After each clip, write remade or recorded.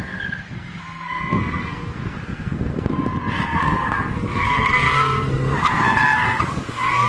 remade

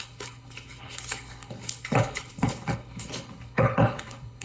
remade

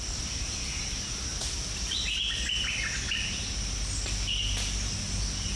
recorded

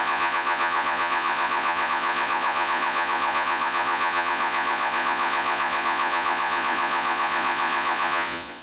remade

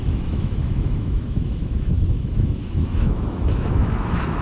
remade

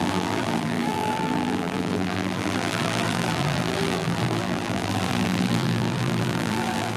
remade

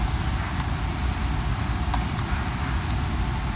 recorded